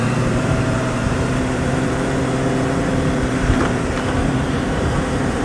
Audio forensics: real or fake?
fake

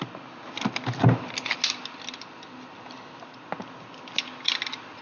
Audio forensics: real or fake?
real